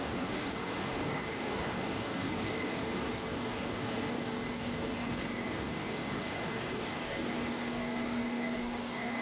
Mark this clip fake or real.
fake